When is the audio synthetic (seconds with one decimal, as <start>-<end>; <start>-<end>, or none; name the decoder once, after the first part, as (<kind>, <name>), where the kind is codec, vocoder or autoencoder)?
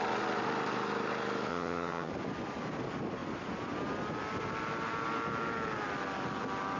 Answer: 1.5-2.1 (vocoder, HiFi-GAN)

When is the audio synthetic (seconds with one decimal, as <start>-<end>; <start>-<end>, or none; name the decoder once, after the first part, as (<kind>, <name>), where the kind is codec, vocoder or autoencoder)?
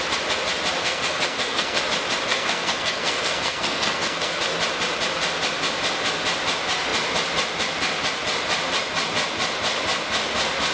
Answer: 0.8-1.8 (codec, SNAC); 2.3-4.4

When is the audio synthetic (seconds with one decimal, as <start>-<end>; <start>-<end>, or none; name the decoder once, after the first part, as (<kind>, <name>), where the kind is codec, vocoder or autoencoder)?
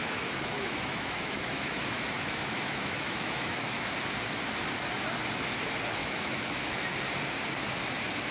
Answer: 0.0-3.9 (autoencoder, DAC-VAE); 6.0-6.8